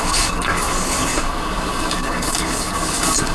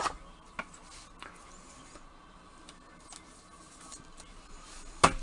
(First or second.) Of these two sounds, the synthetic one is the first